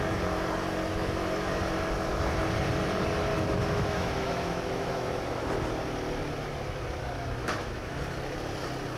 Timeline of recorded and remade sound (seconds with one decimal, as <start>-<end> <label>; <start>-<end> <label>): 0.0-0.9 recorded; 0.9-1.6 remade; 1.6-3.3 recorded; 3.3-5.4 remade; 5.4-7.4 recorded; 7.4-8.0 remade; 8.0-9.0 recorded